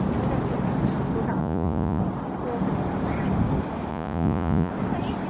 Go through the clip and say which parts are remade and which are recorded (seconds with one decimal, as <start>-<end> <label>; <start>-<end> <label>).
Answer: 0.0-1.4 recorded; 1.4-2.0 remade; 2.0-3.9 recorded; 3.9-4.7 remade; 4.7-5.3 recorded

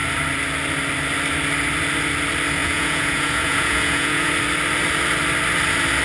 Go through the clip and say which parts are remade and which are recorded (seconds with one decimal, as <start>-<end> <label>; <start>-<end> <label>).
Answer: 0.0-2.6 recorded; 2.6-4.3 remade; 4.3-6.0 recorded

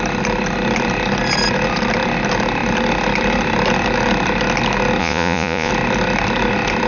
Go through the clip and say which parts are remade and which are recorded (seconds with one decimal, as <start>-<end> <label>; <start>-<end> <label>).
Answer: 0.0-5.0 recorded; 5.0-5.7 remade; 5.7-6.9 recorded

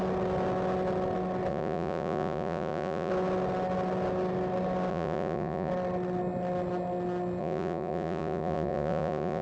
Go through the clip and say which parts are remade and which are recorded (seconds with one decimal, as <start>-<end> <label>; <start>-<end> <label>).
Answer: 0.0-1.5 recorded; 1.5-3.1 remade; 3.1-4.9 recorded; 4.9-5.7 remade; 5.7-7.4 recorded; 7.4-9.4 remade

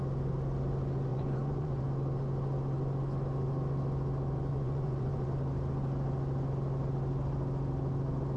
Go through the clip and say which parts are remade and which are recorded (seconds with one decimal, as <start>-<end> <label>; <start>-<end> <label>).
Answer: 0.0-1.1 recorded; 1.1-1.8 remade; 1.8-4.5 recorded; 4.5-5.3 remade; 5.3-8.4 recorded

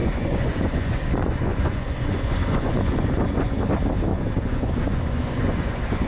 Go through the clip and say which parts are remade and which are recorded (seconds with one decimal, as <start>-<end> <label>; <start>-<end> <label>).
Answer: 0.0-3.6 remade; 3.6-4.1 recorded; 4.1-6.1 remade